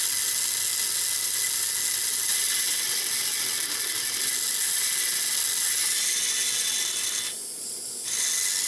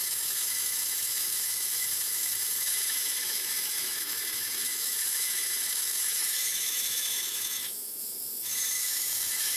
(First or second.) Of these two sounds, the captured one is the first